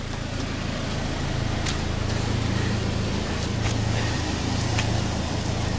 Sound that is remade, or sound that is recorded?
recorded